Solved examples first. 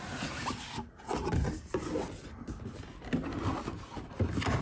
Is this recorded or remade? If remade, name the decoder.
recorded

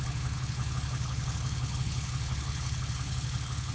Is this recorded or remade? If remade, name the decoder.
remade, codec, HILCodec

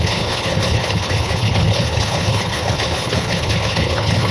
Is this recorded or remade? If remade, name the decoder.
remade, codec, HILCodec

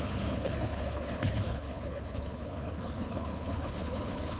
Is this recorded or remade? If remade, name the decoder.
remade, codec, HILCodec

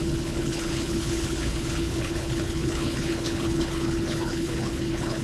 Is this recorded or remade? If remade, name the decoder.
remade, codec, HILCodec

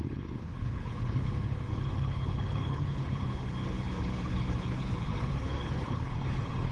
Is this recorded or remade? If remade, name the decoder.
remade, codec, HILCodec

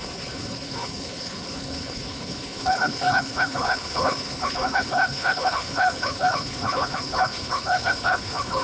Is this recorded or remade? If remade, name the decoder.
remade, codec, HILCodec